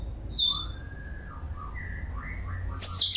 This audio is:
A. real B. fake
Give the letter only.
A